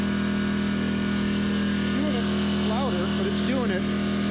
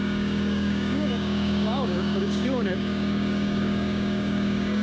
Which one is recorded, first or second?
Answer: first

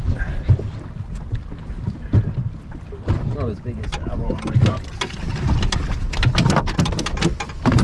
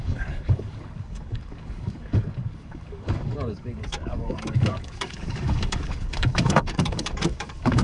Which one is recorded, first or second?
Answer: first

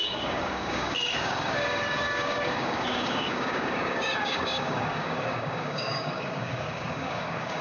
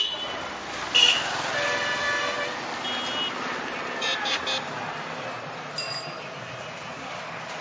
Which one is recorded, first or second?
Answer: second